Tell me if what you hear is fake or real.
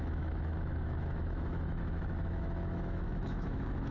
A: fake